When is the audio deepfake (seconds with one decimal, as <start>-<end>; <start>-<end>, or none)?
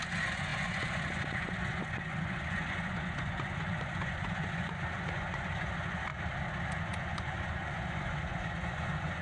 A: 0.0-6.1; 6.8-9.2